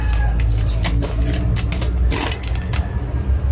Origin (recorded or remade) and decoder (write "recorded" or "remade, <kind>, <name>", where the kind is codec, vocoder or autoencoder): recorded